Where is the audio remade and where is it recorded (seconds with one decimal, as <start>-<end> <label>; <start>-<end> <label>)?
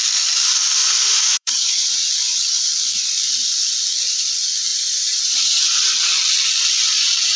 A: 0.0-0.8 recorded; 0.8-1.8 remade; 1.8-4.7 recorded; 4.7-5.6 remade; 5.6-7.4 recorded